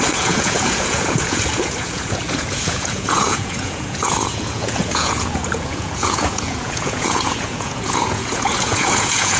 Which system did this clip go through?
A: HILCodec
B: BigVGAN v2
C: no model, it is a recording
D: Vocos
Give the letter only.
D